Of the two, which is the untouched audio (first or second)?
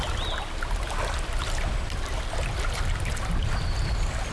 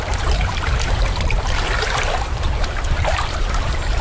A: first